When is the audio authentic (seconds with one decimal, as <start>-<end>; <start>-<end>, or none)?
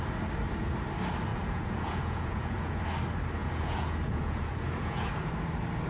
0.0-1.3; 2.8-3.4; 5.3-5.9